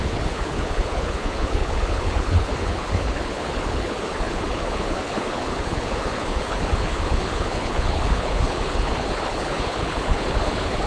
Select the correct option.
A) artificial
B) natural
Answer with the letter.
A